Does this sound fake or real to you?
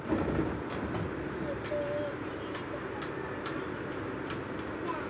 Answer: real